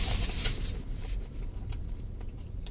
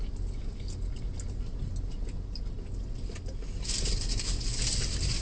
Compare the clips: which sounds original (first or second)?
second